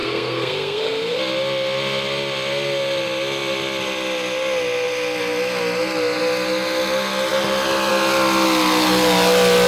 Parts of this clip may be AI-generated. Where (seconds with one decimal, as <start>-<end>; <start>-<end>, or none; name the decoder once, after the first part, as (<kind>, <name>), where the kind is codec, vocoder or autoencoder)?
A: 0.0-1.2 (codec, SNAC)